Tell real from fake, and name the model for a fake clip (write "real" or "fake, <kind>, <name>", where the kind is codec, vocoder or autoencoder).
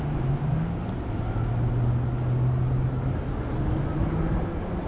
real